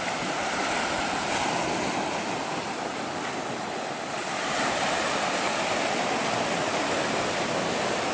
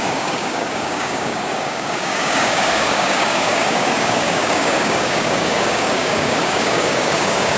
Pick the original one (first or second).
first